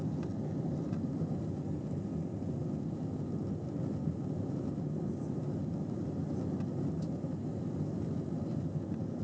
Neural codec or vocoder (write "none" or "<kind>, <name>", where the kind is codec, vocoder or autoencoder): none